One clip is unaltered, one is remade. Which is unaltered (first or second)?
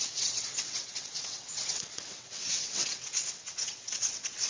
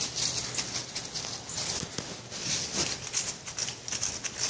second